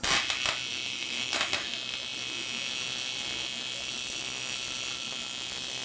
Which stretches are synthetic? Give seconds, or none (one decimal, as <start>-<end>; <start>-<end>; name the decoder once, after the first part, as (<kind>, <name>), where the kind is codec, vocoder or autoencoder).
0.7-1.7 (autoencoder, DAC-VAE)

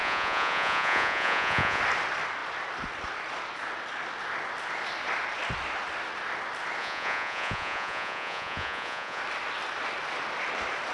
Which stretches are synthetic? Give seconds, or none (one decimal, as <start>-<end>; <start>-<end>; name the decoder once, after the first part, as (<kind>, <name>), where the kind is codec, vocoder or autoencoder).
0.0-1.8 (vocoder, Vocos); 6.8-9.2

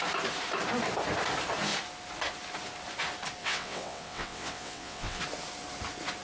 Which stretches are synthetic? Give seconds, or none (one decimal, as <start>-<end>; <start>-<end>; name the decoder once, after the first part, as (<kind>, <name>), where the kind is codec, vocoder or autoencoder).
3.4-5.2 (vocoder, WaveNeXt)

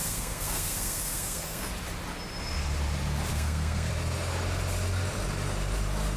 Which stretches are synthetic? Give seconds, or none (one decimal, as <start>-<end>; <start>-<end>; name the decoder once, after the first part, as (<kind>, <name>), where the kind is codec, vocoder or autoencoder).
0.0-1.7 (codec, SNAC); 3.3-3.9

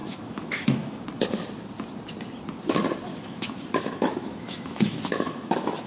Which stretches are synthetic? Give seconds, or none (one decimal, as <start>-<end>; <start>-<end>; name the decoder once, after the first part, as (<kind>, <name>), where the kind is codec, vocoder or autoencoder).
0.0-1.0 (autoencoder, DAC-VAE); 3.1-5.9

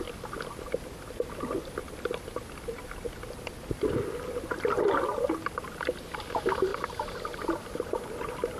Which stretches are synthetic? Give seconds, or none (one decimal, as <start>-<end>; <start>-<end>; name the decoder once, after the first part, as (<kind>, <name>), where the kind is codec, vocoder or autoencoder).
none

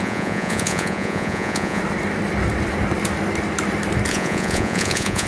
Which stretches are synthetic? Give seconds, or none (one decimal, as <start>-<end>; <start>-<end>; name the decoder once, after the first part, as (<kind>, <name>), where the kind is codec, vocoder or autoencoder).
0.0-1.8 (vocoder, Vocos); 4.1-5.3